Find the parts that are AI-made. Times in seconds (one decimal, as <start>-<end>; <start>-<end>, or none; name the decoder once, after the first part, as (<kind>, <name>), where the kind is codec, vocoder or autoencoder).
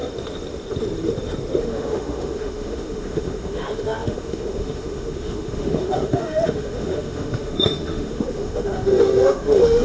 1.6-9.8 (autoencoder, DAC-VAE)